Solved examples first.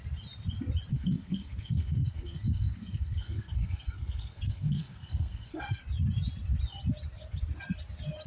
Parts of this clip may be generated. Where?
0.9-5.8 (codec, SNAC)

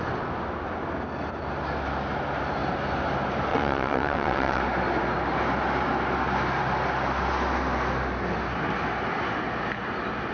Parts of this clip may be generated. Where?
3.5-4.6 (vocoder, WaveNeXt)

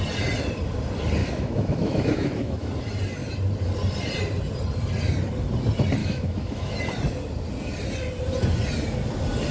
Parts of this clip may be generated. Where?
1.2-2.7 (autoencoder, DAC-VAE); 6.0-6.8

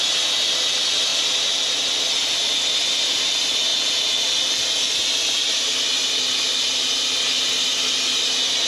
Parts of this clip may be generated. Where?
none